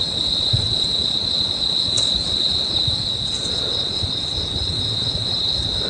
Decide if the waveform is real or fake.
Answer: fake